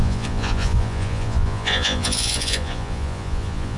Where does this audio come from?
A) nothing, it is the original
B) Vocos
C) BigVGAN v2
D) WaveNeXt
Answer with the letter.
B